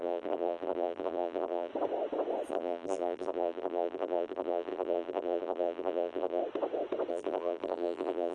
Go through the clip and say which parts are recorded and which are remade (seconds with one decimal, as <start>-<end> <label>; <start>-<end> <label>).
0.0-1.7 remade; 1.7-2.5 recorded; 2.5-6.4 remade; 6.4-7.1 recorded; 7.1-8.3 remade